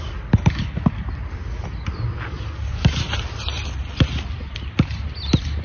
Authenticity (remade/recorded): recorded